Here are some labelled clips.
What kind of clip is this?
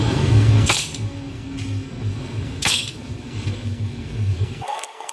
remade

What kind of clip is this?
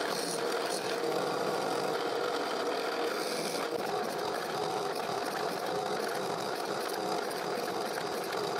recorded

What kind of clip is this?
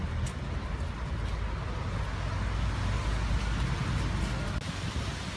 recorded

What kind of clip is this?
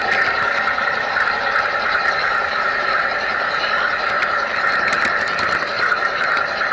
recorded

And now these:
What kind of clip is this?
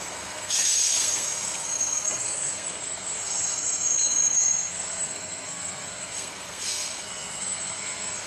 remade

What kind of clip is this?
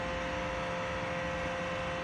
recorded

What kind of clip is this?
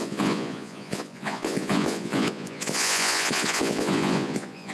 remade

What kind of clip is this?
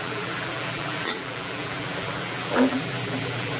remade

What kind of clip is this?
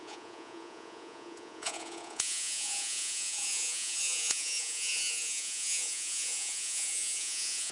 remade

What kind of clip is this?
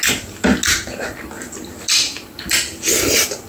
recorded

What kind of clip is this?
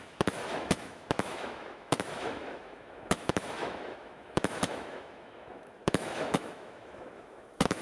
remade